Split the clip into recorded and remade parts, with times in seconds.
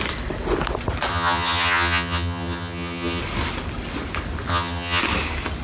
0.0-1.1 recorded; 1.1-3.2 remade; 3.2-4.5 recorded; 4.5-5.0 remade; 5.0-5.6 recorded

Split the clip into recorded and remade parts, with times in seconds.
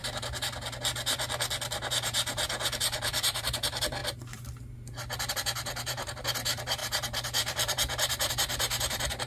0.0-1.9 recorded; 1.9-4.0 remade; 4.0-5.3 recorded; 5.3-9.3 remade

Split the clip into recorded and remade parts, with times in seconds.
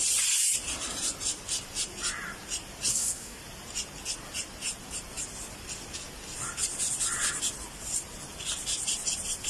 0.0-2.9 recorded; 2.9-3.4 remade; 3.4-9.5 recorded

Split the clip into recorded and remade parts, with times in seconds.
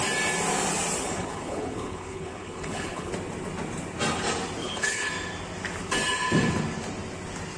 0.0-1.0 recorded; 1.0-3.1 remade; 3.1-4.6 recorded; 4.6-5.1 remade; 5.1-7.6 recorded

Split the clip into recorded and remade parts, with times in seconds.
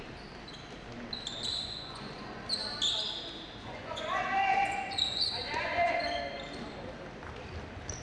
0.0-1.5 recorded; 1.5-2.4 remade; 2.4-3.6 recorded; 3.6-6.0 remade; 6.0-8.0 recorded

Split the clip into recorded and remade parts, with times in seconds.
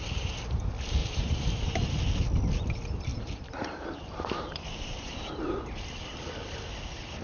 0.0-1.0 recorded; 1.0-1.9 remade; 1.9-3.1 recorded; 3.1-5.4 remade; 5.4-7.2 recorded